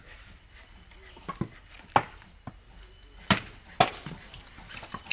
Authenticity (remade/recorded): recorded